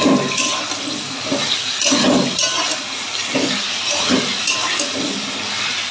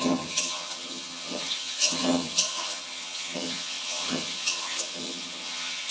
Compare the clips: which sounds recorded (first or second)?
first